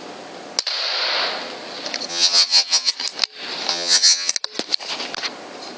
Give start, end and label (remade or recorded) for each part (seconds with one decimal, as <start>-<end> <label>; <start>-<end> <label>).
0.0-2.1 recorded; 2.1-2.9 remade; 2.9-3.7 recorded; 3.7-4.3 remade; 4.3-5.8 recorded

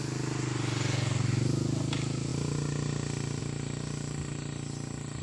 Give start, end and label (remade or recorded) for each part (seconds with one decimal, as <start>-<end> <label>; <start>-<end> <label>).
0.0-5.2 recorded

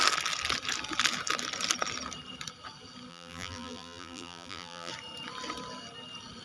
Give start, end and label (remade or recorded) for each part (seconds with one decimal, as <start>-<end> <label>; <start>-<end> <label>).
0.0-3.1 recorded; 3.1-4.9 remade; 4.9-6.4 recorded

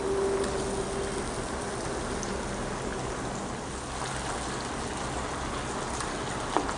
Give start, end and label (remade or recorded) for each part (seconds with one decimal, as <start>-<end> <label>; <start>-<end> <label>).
0.0-6.8 recorded

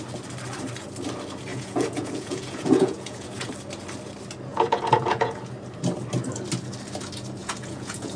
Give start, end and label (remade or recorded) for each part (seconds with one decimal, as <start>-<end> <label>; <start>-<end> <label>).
0.0-1.5 recorded; 1.5-3.5 remade; 3.5-4.5 recorded; 4.5-5.4 remade; 5.4-7.4 recorded; 7.4-8.2 remade

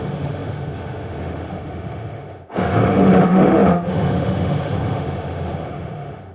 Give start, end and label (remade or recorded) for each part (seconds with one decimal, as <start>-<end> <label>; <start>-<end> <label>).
0.0-6.3 remade

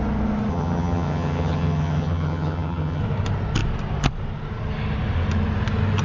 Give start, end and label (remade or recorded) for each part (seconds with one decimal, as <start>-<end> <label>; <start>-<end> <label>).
0.0-0.5 recorded; 0.5-3.0 remade; 3.0-6.0 recorded

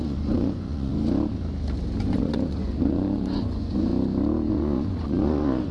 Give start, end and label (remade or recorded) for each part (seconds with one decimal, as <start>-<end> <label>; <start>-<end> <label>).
0.0-0.9 remade; 0.9-2.0 recorded; 2.0-3.9 remade; 3.9-4.5 recorded; 4.5-5.7 remade